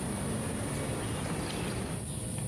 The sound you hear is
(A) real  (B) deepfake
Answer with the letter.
A